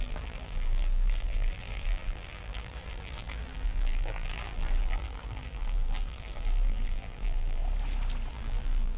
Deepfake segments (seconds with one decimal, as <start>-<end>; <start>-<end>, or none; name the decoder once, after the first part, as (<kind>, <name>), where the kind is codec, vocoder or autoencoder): 0.0-7.6 (vocoder, BigVGAN v2); 8.3-9.0